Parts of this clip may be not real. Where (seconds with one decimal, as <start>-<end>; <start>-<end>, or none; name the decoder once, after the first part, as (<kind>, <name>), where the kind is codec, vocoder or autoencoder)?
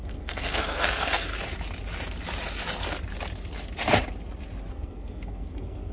0.0-1.3 (codec, SNAC); 4.7-5.9